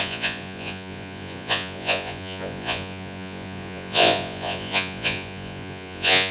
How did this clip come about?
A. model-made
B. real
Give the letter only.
A